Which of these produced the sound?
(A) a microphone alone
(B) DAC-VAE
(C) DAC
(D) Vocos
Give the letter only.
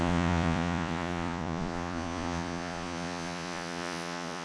D